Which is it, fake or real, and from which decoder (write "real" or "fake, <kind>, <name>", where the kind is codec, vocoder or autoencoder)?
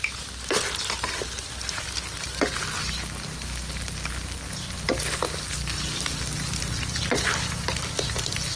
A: real